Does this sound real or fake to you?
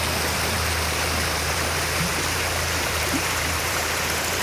fake